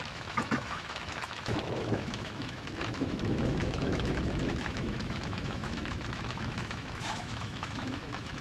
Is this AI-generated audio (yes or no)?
yes